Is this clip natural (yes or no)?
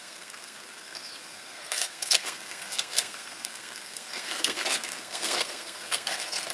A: no